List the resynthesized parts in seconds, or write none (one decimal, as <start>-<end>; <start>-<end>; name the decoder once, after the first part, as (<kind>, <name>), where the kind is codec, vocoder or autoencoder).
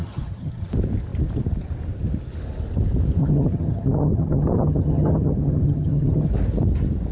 0.0-0.7 (vocoder, HiFi-GAN); 3.2-6.3